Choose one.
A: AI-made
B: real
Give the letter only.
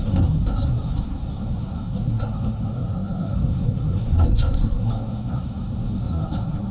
A